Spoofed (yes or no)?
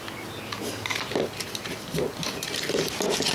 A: no